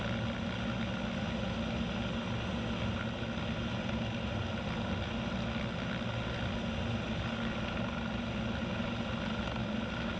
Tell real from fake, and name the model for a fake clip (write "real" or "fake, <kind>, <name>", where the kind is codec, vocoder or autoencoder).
real